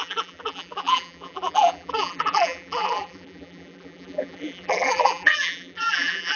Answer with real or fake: fake